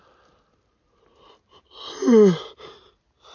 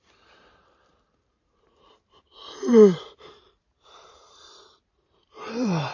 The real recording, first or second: first